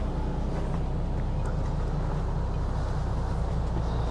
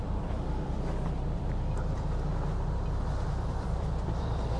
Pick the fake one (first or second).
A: second